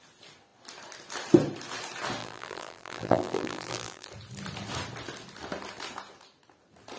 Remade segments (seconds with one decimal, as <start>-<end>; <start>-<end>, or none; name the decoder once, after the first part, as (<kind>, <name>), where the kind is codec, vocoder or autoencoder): 2.2-4.1 (vocoder, BigVGAN v2)